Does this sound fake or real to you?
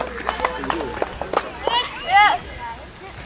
real